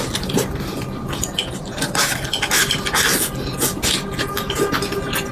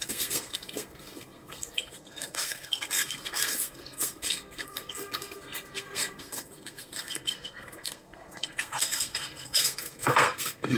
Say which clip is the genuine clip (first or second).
first